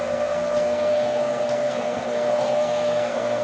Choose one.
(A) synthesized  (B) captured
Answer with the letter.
A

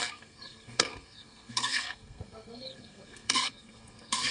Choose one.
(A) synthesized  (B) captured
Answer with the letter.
A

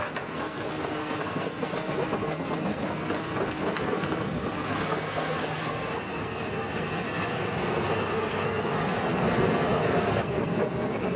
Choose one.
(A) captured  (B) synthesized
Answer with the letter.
B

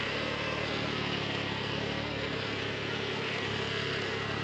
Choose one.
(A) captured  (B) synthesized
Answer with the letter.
B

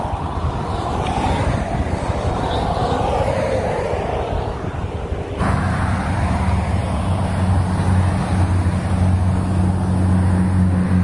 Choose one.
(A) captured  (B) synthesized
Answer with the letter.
A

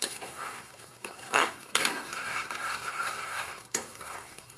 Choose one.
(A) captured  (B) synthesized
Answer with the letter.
B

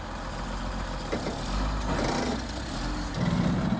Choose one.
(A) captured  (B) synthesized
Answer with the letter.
A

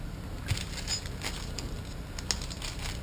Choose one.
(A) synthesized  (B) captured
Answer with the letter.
B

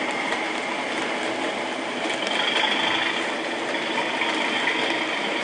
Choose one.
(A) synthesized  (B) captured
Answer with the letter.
B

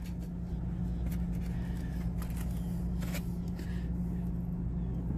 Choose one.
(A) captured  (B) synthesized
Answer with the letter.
A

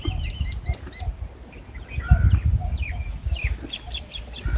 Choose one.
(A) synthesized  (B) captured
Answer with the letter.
B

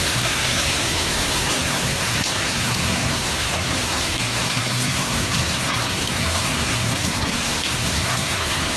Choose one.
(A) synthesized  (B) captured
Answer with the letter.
A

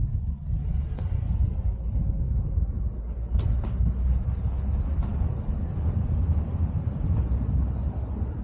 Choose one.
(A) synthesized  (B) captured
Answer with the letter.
B